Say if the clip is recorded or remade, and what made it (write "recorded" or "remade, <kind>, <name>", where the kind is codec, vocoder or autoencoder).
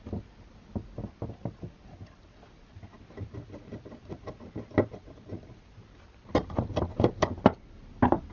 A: recorded